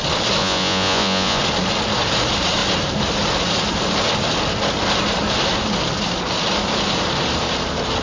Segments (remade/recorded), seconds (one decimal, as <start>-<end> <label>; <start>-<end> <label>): 0.0-0.4 recorded; 0.4-1.4 remade; 1.4-8.0 recorded